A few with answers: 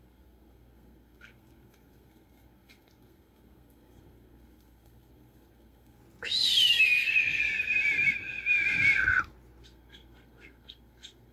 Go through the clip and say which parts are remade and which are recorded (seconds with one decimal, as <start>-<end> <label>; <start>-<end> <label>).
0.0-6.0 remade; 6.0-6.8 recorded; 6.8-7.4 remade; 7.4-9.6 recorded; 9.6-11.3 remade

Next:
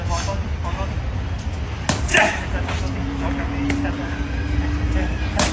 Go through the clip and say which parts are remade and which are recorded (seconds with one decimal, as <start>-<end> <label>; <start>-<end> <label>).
0.0-5.5 recorded

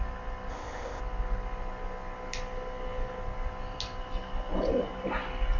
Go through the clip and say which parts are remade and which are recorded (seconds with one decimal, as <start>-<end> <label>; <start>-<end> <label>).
0.0-0.5 recorded; 0.5-1.0 remade; 1.0-5.6 recorded

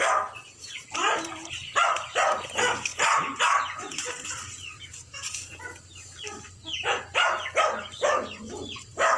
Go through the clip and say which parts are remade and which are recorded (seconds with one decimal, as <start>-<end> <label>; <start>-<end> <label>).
0.0-9.2 recorded

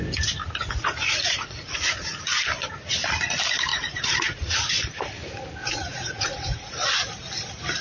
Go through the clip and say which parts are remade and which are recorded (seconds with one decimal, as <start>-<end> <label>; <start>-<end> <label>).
0.0-0.4 recorded; 0.4-2.0 remade; 2.0-3.7 recorded; 3.7-4.7 remade; 4.7-5.6 recorded; 5.6-6.7 remade; 6.7-7.8 recorded

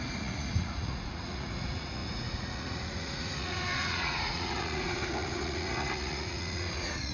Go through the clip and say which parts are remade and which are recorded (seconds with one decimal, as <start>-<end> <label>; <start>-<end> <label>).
0.0-7.1 remade